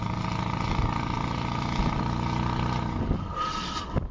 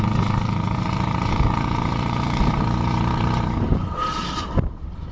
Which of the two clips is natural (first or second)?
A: first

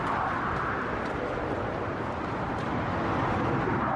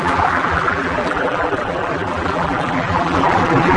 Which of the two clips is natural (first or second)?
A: first